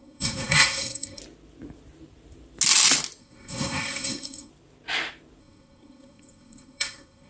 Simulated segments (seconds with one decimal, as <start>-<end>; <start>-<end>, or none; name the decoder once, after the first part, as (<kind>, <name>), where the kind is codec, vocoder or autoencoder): 0.0-1.2 (codec, SNAC); 3.2-4.5; 5.4-7.3